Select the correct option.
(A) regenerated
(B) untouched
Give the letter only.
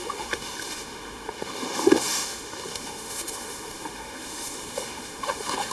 A